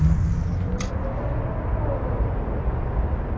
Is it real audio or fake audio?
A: real